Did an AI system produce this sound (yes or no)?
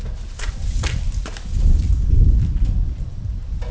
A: no